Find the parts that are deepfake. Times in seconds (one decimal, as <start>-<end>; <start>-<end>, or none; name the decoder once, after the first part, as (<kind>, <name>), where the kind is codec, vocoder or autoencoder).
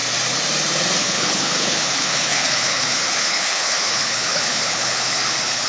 1.0-5.7 (codec, HILCodec)